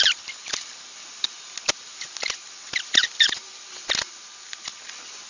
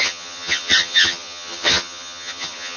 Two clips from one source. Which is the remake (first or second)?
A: second